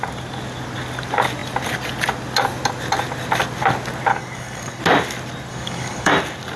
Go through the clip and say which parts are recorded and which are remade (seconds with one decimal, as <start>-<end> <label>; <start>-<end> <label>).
0.0-4.1 recorded; 4.1-4.8 remade; 4.8-5.5 recorded; 5.5-6.1 remade; 6.1-6.6 recorded